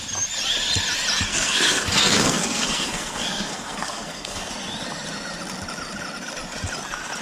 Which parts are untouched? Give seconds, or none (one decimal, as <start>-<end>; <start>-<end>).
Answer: 0.0-1.3; 4.5-7.2